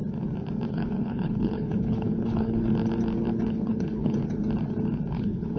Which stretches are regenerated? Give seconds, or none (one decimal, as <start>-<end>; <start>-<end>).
0.7-2.7; 3.5-4.2; 5.1-5.6